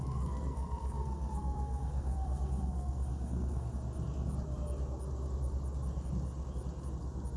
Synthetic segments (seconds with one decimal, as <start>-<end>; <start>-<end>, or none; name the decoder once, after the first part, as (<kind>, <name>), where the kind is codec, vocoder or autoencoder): 0.0-3.7 (codec, SNAC)